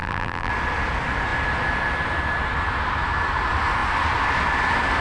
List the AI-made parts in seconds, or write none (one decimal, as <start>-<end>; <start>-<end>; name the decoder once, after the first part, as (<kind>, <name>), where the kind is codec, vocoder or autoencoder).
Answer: 0.0-0.5 (vocoder, BigVGAN v2)